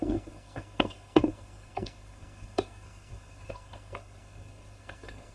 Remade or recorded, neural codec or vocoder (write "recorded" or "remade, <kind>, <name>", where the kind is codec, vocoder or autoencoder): remade, codec, SNAC